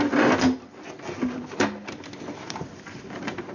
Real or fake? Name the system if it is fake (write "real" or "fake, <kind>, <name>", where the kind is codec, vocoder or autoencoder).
fake, vocoder, BigVGAN v2